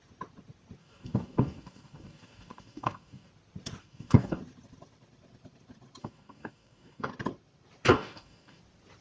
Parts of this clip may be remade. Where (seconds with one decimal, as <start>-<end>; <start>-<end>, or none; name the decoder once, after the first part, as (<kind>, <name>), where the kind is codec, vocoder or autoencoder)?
0.8-3.3 (codec, DAC); 3.8-4.4; 6.0-7.1; 7.9-8.6